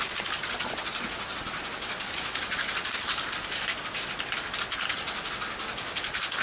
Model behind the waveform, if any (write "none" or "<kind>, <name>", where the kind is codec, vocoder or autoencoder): none